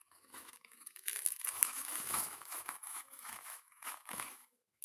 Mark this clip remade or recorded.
remade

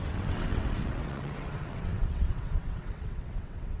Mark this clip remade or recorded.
remade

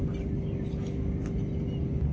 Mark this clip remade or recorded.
recorded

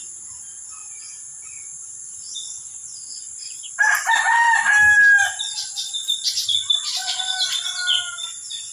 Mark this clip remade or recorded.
recorded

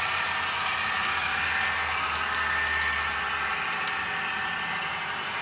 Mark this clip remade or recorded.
recorded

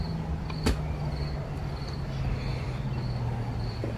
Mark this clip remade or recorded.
recorded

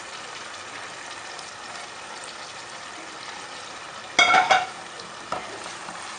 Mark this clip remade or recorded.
recorded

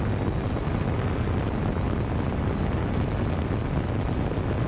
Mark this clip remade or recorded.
recorded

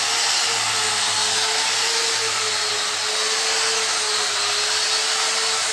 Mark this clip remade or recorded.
recorded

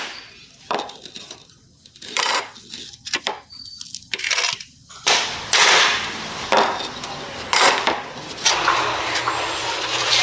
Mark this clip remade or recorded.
recorded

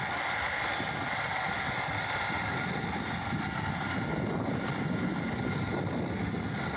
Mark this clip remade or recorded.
recorded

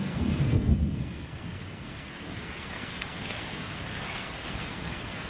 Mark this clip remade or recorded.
remade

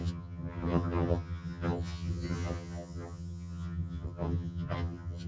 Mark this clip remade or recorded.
remade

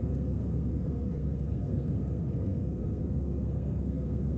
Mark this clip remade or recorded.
remade